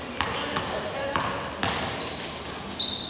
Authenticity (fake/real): real